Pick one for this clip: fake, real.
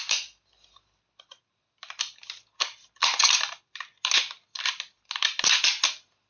real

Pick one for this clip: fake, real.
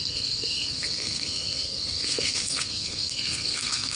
fake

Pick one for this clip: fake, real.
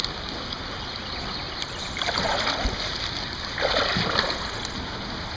real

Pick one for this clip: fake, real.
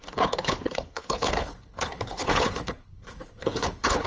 fake